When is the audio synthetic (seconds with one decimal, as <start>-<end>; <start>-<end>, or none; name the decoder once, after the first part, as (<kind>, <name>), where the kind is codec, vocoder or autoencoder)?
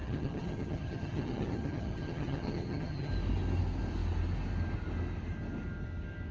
0.0-3.1 (vocoder, HiFi-GAN)